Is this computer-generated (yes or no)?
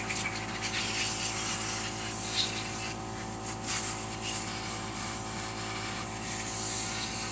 no